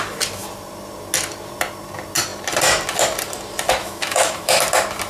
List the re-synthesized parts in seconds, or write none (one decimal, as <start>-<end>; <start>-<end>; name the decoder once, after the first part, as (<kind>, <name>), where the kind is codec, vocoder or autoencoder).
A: 3.8-4.6 (autoencoder, DAC-VAE)